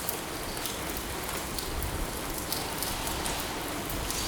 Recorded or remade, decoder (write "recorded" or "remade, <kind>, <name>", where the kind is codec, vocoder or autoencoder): recorded